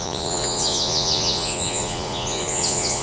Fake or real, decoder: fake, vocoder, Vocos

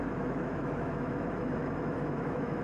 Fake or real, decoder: fake, autoencoder, DAC-VAE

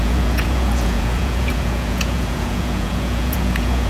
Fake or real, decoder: fake, vocoder, Vocos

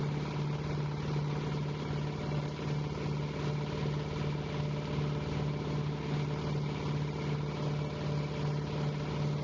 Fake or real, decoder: real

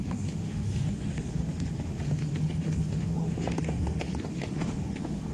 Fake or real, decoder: fake, autoencoder, DAC-VAE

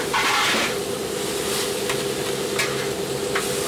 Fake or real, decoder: real